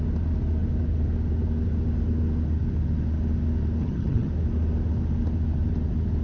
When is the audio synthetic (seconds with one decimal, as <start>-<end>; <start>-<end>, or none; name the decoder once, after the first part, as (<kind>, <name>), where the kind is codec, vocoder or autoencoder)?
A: 3.8-4.3 (vocoder, HiFi-GAN)